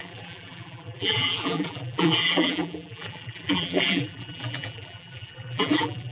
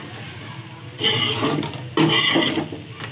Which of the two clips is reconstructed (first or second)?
first